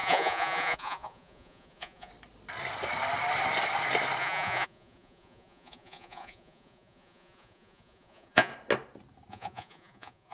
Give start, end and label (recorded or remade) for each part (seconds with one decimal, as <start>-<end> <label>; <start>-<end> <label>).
0.0-2.1 remade; 2.1-4.2 recorded; 4.2-8.5 remade; 8.5-9.3 recorded; 9.3-10.3 remade